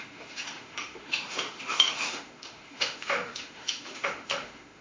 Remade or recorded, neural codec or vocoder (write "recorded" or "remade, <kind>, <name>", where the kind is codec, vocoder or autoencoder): remade, autoencoder, DAC-VAE